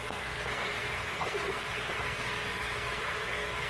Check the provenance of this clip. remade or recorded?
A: remade